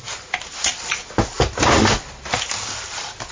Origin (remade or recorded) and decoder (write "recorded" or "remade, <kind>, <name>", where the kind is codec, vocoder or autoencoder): recorded